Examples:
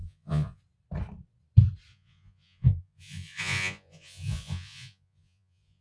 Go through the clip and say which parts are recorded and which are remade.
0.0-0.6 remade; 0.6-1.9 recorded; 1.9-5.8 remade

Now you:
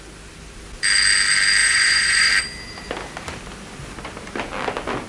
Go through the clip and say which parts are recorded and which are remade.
0.0-1.6 recorded; 1.6-2.3 remade; 2.3-5.1 recorded

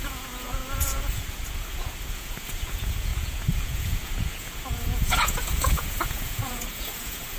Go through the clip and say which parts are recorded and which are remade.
0.0-7.4 remade

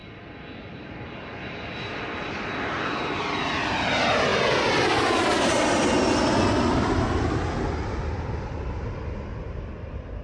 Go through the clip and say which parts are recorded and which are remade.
0.0-10.2 recorded